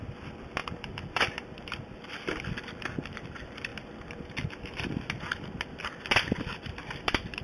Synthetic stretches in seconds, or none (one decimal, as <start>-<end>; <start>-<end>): none